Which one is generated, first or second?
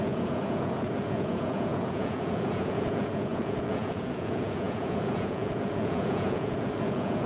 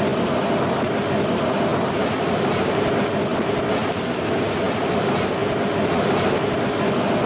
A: first